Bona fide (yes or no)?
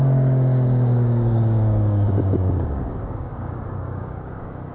no